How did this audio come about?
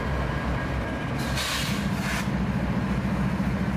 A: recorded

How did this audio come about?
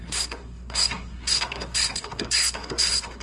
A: remade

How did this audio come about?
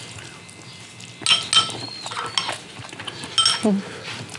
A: recorded